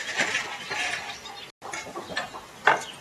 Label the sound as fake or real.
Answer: real